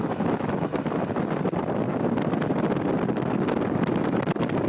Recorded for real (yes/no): yes